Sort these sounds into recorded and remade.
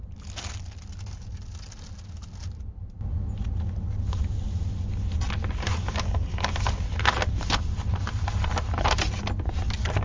recorded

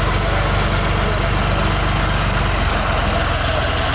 recorded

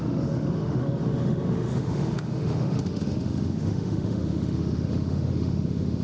remade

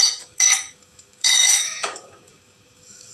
remade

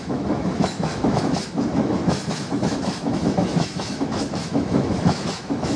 remade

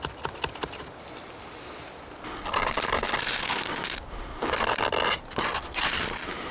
recorded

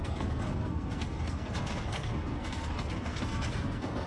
remade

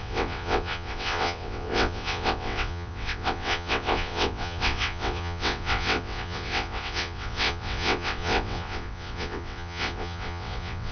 remade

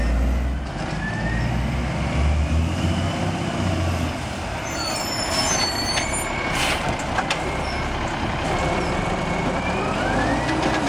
recorded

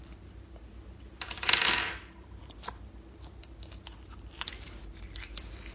recorded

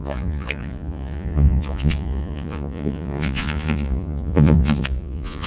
remade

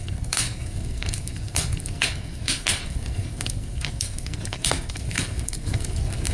remade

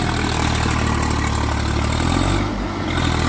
recorded